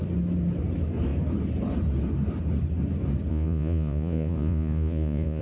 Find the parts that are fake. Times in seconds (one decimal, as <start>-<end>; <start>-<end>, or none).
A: 3.3-5.4